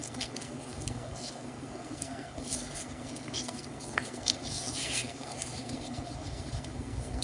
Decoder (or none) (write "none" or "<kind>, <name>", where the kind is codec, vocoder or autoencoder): codec, SNAC